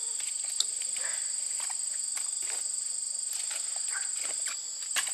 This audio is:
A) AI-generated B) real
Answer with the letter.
B